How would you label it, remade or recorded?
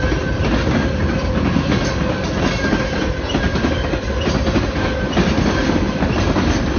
recorded